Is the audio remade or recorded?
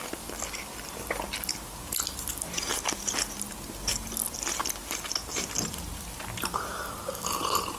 recorded